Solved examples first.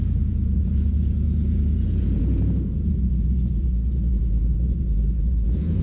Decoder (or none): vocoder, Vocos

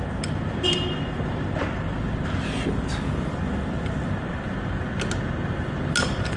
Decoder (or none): none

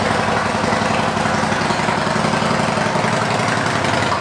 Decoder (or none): none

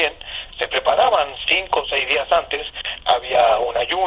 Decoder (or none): vocoder, Vocos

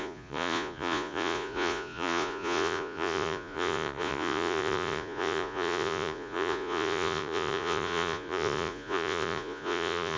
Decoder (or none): vocoder, Vocos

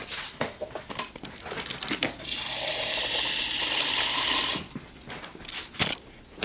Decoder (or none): none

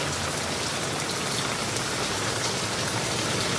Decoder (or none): none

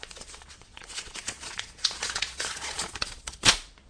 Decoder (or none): vocoder, Vocos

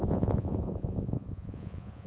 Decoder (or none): vocoder, Vocos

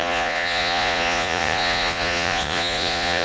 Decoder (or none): vocoder, Vocos